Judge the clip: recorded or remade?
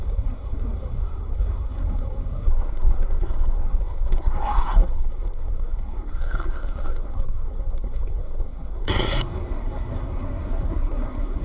remade